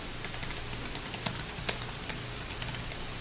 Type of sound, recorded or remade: recorded